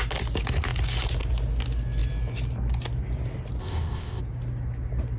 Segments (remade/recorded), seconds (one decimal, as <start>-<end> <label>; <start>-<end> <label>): 0.0-3.6 recorded; 3.6-4.2 remade; 4.2-5.2 recorded